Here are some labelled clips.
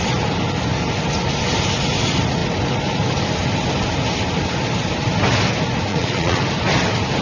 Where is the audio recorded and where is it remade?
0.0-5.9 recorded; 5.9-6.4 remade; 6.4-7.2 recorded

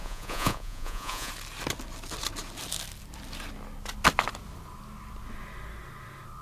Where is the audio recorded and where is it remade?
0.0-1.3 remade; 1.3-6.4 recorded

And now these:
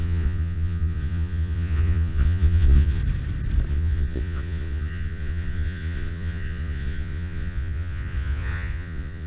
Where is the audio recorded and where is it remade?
0.0-3.0 remade; 3.0-3.7 recorded; 3.7-9.3 remade